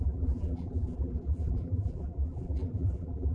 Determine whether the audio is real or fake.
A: fake